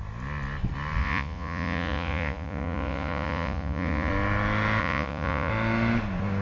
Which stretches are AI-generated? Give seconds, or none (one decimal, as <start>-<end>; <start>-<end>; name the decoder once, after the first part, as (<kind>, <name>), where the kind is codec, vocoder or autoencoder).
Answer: 1.0-4.1 (vocoder, Vocos); 4.8-5.5